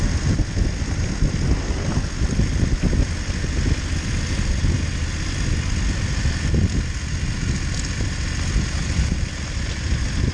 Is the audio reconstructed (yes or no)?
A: no